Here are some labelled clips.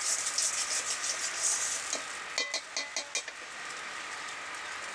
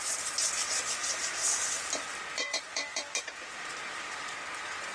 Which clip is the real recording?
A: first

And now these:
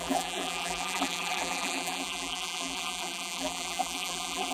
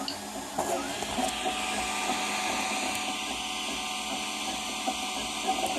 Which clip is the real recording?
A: second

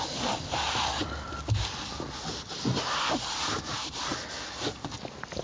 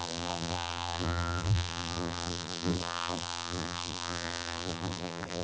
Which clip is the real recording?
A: first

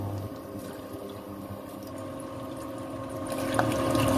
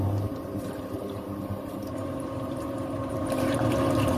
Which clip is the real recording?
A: first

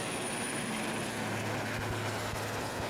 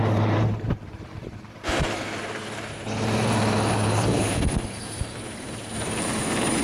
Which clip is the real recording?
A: first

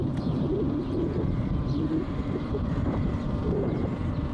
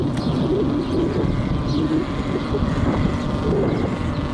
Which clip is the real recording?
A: second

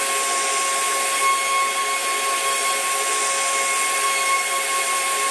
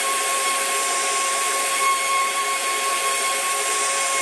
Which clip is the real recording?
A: first